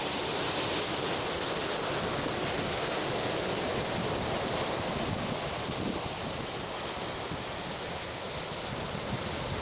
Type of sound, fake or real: real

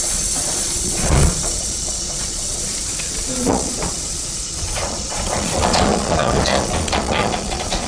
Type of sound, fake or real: fake